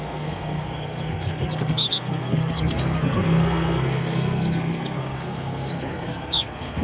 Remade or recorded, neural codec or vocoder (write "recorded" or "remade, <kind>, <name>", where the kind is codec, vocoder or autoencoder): remade, codec, SNAC